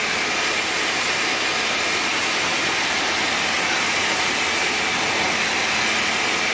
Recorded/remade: recorded